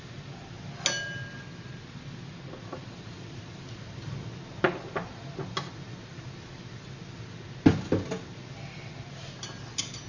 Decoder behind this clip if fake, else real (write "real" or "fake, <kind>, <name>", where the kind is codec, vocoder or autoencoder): real